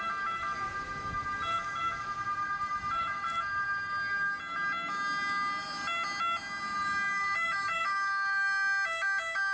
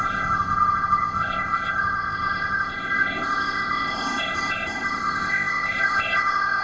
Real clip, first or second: first